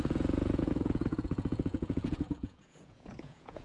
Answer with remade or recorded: remade